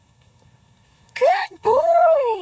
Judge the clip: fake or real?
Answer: fake